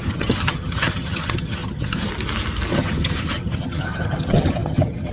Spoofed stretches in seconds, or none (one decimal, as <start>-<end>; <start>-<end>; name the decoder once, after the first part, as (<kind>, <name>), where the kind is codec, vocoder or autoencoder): 0.0-2.1 (vocoder, HiFi-GAN); 2.7-5.1